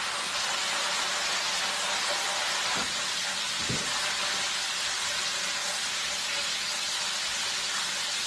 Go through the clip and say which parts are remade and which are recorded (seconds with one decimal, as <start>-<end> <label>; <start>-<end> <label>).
0.0-8.3 recorded